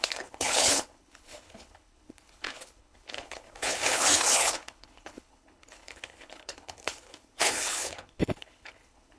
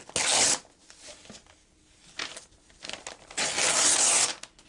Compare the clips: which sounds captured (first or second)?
second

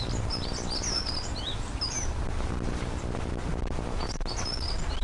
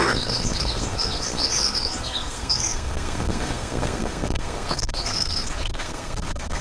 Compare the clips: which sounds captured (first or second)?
first